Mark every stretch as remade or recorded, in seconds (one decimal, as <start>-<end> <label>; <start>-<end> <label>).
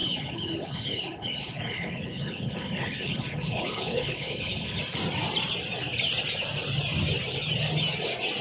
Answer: 0.0-4.8 remade; 4.8-8.4 recorded